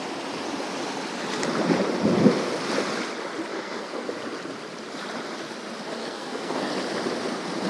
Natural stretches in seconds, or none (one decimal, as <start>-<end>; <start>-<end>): 0.0-3.5; 4.1-6.0; 6.7-7.7